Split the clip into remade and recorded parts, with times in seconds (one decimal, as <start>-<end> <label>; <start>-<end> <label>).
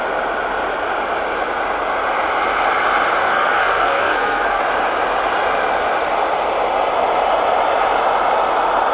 0.0-3.2 recorded; 3.2-4.6 remade; 4.6-8.9 recorded